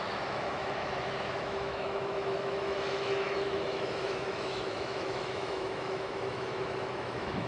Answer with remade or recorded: remade